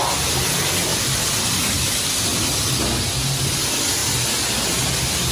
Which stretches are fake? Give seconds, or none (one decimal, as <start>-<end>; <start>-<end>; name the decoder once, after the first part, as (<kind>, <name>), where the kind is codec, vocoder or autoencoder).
0.9-1.6 (vocoder, BigVGAN v2)